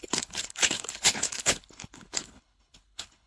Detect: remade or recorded remade